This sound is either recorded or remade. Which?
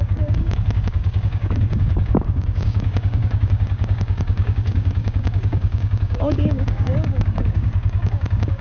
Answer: remade